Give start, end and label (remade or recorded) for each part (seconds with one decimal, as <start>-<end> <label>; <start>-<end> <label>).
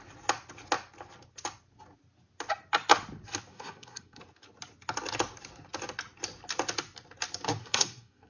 0.0-3.5 recorded; 3.5-4.2 remade; 4.2-7.6 recorded; 7.6-8.3 remade